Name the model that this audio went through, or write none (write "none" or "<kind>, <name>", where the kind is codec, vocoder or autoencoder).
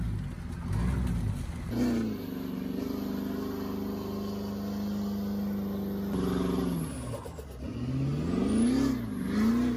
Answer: none